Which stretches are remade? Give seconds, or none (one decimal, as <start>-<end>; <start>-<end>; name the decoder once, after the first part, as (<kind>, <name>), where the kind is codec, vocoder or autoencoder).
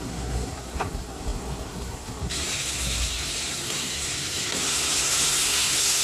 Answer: 0.0-6.0 (codec, SNAC)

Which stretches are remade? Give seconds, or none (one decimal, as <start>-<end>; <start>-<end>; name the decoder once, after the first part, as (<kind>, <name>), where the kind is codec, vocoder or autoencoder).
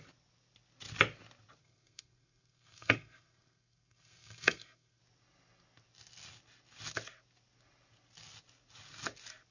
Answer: 1.6-5.0 (codec, SNAC)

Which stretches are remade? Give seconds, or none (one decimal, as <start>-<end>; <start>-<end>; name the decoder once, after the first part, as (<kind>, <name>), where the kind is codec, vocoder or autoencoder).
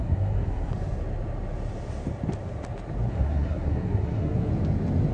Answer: 0.0-0.7 (codec, SNAC); 3.1-4.5